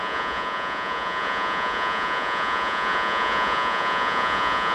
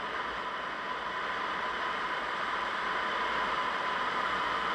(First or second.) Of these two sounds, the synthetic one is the first